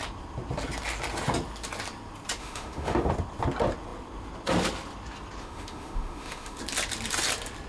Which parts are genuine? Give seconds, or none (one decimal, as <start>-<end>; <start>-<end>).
0.0-2.4; 3.1-5.4; 6.6-7.7